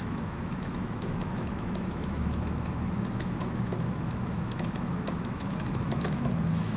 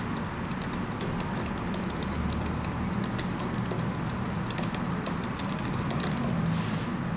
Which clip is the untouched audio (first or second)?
second